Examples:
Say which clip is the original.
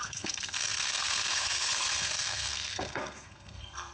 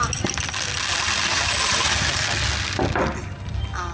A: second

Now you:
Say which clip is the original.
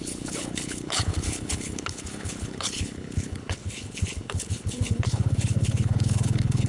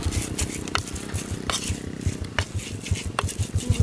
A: second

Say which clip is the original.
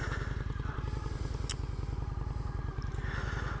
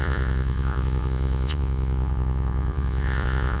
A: first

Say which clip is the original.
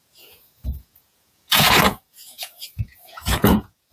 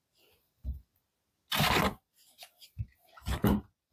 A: second